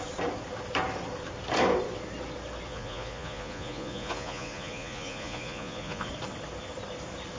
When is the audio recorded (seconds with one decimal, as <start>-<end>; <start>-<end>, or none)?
0.0-2.7; 6.1-7.4